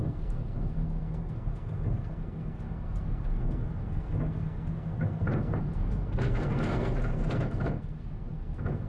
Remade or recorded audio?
remade